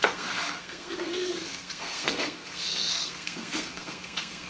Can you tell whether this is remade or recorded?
remade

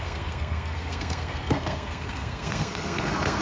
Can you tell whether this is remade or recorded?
remade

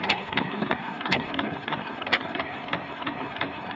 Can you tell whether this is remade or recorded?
remade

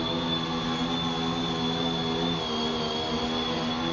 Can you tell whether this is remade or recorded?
recorded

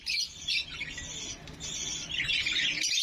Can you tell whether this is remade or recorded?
recorded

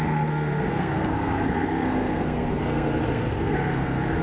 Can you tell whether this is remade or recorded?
remade